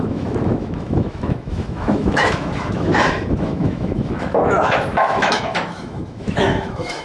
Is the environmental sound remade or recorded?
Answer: remade